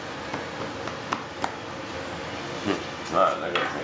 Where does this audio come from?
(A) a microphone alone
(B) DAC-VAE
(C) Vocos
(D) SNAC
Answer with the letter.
A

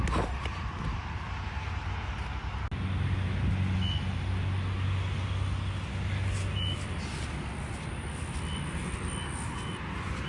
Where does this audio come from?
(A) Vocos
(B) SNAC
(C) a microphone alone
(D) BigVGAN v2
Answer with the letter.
C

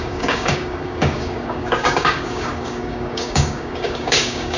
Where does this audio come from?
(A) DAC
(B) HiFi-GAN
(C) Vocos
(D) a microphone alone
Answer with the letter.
A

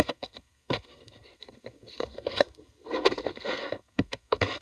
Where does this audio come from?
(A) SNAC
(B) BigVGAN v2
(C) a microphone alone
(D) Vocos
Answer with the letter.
A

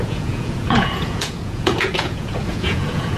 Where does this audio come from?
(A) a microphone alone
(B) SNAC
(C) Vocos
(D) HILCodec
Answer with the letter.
C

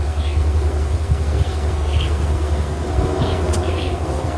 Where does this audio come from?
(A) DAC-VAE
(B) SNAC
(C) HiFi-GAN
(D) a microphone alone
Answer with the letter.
B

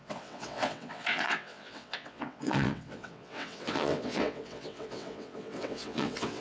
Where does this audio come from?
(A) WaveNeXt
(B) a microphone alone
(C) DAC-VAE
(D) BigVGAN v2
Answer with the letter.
A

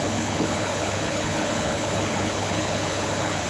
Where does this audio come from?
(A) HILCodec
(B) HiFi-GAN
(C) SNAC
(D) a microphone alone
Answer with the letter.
A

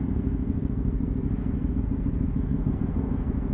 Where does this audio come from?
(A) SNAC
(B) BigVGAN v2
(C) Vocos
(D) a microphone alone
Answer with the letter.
A